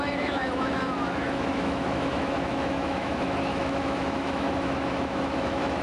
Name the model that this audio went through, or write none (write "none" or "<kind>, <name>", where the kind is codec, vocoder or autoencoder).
autoencoder, DAC-VAE